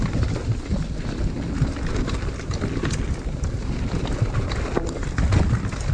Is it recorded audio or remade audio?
recorded